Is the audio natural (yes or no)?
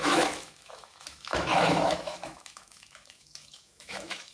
no